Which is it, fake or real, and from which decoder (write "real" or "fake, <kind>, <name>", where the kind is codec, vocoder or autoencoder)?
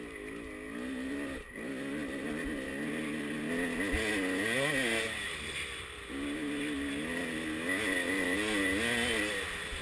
real